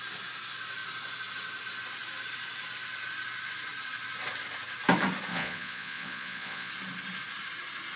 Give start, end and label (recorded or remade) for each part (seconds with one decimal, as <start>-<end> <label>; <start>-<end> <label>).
0.0-5.3 recorded; 5.3-6.7 remade; 6.7-8.0 recorded